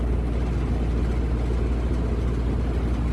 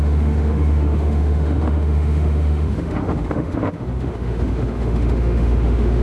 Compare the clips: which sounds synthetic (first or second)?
second